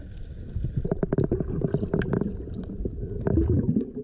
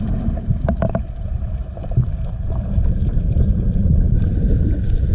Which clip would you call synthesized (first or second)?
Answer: second